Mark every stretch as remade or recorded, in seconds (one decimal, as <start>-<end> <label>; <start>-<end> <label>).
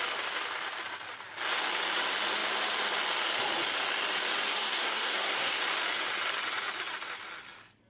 0.0-4.5 recorded; 4.5-5.6 remade; 5.6-7.9 recorded